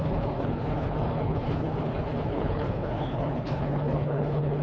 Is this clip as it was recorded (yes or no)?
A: no